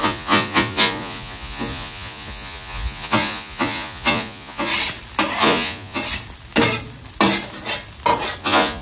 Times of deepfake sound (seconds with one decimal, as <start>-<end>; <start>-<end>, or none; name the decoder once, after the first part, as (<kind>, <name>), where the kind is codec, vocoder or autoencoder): 0.0-4.7 (vocoder, Vocos); 5.4-6.0; 8.4-8.8